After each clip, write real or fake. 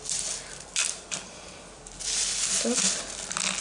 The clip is real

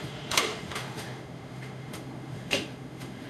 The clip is fake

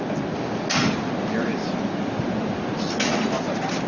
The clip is real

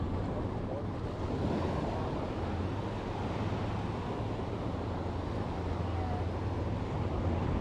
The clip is real